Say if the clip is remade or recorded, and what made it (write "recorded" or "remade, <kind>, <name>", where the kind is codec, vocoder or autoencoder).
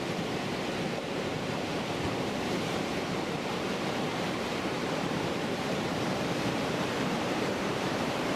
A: remade, vocoder, BigVGAN v2